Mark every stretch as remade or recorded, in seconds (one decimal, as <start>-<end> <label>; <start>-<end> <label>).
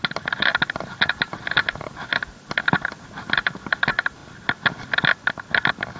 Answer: 0.0-6.0 recorded